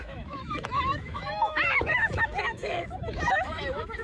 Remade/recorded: remade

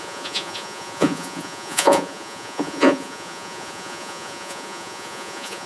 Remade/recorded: remade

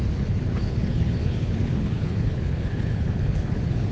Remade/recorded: remade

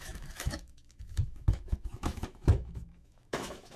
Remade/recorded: remade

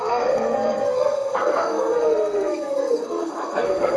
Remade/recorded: remade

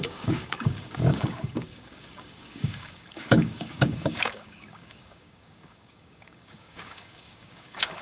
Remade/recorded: remade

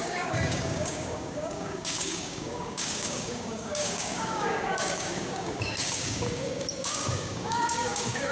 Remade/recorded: remade